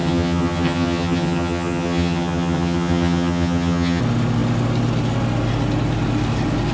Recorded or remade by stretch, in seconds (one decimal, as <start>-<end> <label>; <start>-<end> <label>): 0.0-4.0 remade; 4.0-6.7 recorded